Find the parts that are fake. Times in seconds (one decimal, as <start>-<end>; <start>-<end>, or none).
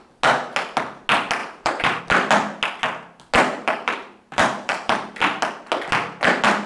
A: 1.4-2.0; 3.5-5.1